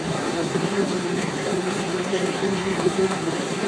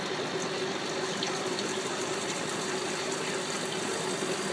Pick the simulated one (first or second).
first